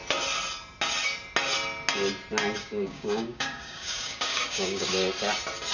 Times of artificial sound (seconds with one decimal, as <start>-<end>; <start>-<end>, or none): 2.6-4.9

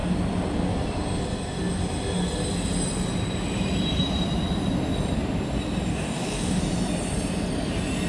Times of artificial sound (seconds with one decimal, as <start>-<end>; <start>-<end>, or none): 5.9-6.6

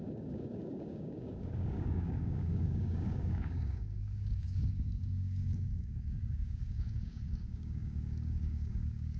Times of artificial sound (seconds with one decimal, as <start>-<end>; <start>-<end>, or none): 0.0-9.2

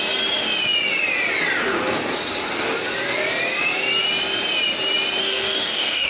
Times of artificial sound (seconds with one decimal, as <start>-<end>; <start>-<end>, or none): 5.2-6.1

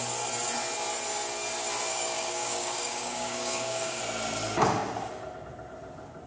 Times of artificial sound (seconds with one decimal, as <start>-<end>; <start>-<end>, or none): 1.9-4.0

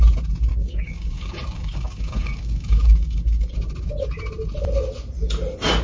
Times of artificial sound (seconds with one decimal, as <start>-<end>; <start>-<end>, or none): 0.5-3.5